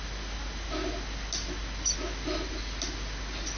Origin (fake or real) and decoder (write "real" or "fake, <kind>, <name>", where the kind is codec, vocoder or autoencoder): real